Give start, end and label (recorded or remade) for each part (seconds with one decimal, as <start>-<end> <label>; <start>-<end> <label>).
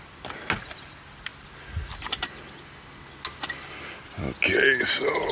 0.0-5.3 recorded